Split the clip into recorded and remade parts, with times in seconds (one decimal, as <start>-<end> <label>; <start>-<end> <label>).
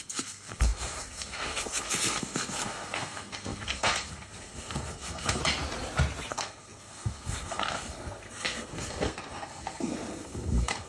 0.0-5.4 remade; 5.4-6.3 recorded; 6.3-10.9 remade